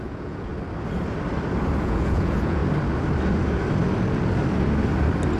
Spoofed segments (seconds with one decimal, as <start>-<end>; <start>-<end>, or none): 0.0-0.5; 1.8-2.6